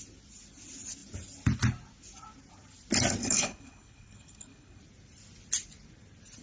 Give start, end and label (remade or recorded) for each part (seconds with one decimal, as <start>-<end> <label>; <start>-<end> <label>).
0.0-3.2 recorded; 3.2-4.8 remade; 4.8-6.4 recorded